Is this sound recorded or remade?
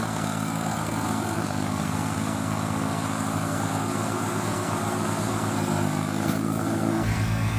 remade